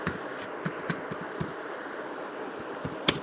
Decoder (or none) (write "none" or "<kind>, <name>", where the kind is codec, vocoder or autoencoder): none